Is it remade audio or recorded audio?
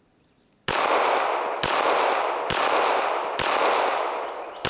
recorded